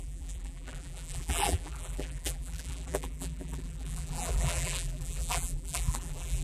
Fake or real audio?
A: fake